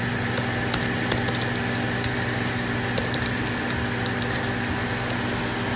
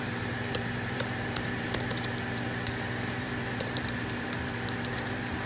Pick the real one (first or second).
first